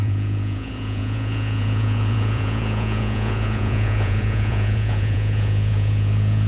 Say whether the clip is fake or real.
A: fake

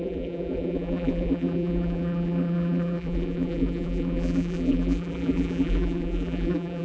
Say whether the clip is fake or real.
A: fake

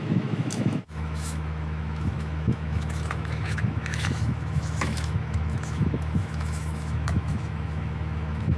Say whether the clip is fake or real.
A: fake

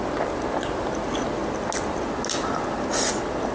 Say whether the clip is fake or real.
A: real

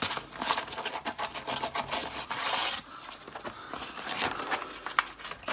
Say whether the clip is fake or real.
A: real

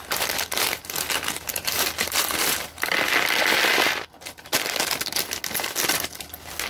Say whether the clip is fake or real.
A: real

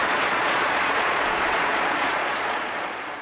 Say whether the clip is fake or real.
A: fake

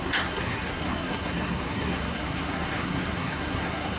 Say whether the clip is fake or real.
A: fake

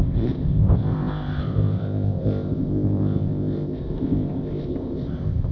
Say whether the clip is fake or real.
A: fake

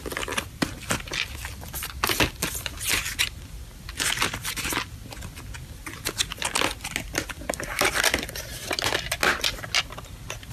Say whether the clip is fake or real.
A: real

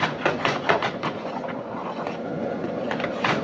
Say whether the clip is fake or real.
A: fake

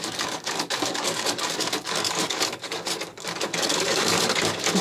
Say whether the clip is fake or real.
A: fake